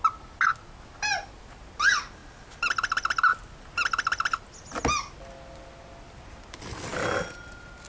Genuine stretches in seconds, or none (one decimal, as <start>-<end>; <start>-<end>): 0.0-7.9